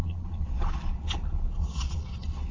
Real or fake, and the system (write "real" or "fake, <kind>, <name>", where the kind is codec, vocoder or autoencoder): fake, vocoder, Vocos